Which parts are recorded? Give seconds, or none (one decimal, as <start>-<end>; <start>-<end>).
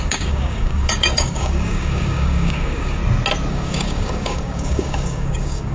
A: 3.0-3.5